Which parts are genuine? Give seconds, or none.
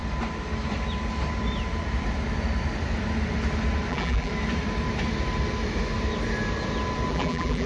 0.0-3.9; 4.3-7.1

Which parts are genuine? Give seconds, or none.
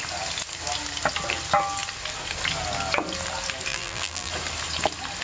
0.0-3.7; 4.3-5.2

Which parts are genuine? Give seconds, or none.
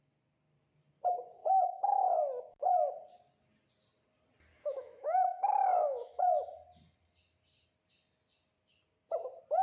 0.0-1.4; 2.9-4.5; 6.2-9.6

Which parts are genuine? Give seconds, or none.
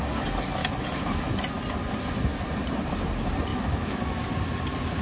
0.0-0.6; 1.3-3.5; 4.3-5.0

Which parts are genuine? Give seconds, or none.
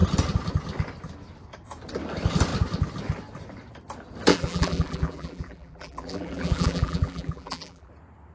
0.0-4.3; 7.9-8.3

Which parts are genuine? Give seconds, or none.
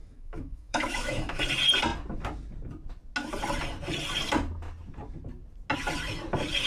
1.4-6.7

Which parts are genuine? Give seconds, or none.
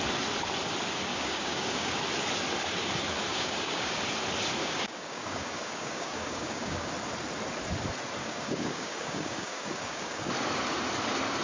0.0-1.1; 2.0-3.3; 4.0-4.6; 6.9-8.2; 10.3-11.4